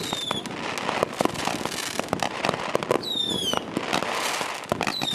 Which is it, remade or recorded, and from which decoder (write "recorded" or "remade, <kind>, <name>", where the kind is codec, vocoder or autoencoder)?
recorded